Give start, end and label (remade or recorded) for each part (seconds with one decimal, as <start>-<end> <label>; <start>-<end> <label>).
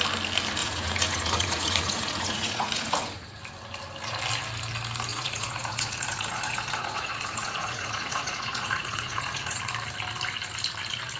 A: 0.0-0.6 recorded; 0.6-3.4 remade; 3.4-5.1 recorded; 5.1-9.6 remade; 9.6-11.2 recorded